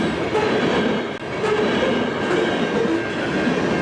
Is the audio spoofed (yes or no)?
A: no